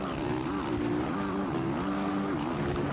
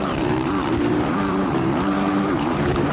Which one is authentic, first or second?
first